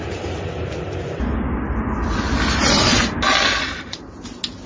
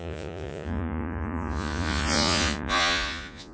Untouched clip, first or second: first